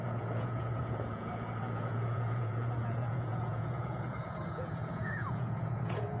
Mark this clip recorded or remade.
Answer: remade